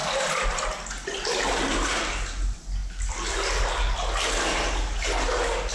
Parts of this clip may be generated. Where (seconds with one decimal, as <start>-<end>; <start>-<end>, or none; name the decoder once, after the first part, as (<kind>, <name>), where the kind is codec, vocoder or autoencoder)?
none